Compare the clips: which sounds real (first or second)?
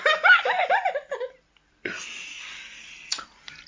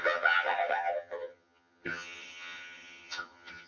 first